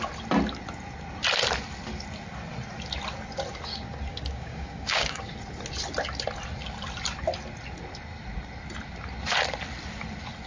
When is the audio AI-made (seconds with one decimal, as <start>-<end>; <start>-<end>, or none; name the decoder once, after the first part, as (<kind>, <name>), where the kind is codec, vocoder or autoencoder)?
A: 4.1-5.3 (codec, DAC)